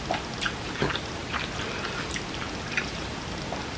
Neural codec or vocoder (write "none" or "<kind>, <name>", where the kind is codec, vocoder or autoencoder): none